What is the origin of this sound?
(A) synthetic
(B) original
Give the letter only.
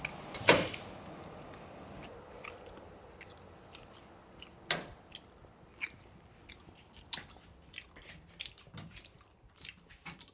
B